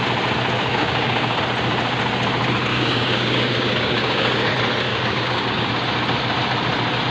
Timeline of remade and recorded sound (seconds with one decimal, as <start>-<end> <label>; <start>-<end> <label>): 0.0-0.7 recorded; 0.7-1.4 remade; 1.4-2.7 recorded; 2.7-4.5 remade; 4.5-4.9 recorded; 4.9-5.7 remade; 5.7-7.1 recorded